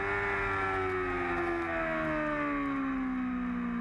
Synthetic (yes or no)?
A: no